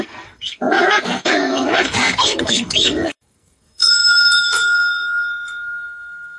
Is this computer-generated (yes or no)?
yes